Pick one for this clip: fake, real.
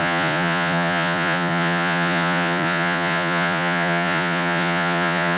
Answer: fake